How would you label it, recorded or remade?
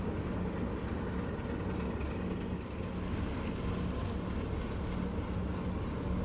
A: recorded